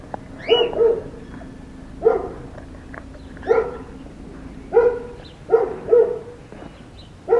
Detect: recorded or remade recorded